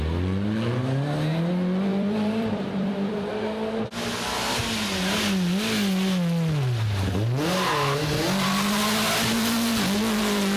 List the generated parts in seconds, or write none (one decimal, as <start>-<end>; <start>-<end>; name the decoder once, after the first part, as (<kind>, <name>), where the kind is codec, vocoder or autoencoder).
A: 1.9-3.3 (vocoder, BigVGAN v2)